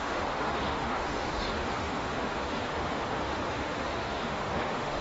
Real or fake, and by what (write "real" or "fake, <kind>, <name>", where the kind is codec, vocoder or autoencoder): fake, autoencoder, DAC-VAE